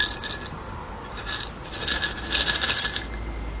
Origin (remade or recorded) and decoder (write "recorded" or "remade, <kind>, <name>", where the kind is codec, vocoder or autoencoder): recorded